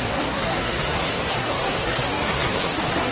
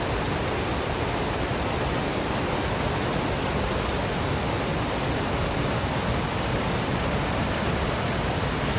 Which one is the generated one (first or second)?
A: first